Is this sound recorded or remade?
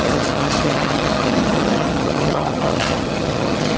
remade